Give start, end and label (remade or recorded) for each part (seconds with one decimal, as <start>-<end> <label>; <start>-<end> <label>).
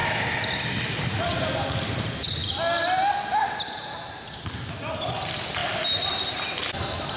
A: 0.0-7.2 recorded